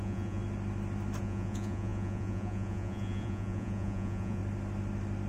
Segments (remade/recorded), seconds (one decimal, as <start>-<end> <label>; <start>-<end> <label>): 0.0-0.4 remade; 0.4-1.2 recorded; 1.2-4.4 remade; 4.4-5.3 recorded